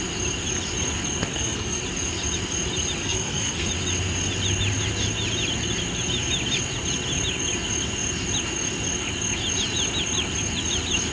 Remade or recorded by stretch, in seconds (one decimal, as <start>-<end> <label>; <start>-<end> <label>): 0.0-1.3 recorded; 1.3-1.8 remade; 1.8-3.0 recorded; 3.0-3.7 remade; 3.7-11.1 recorded

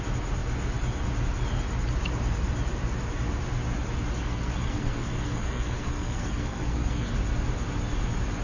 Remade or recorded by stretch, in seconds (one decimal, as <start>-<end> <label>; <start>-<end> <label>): 0.0-4.2 recorded; 4.2-7.1 remade; 7.1-8.4 recorded

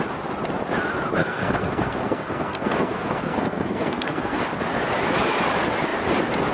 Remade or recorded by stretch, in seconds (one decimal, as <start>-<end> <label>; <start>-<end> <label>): 0.0-1.2 recorded; 1.2-4.4 remade; 4.4-6.5 recorded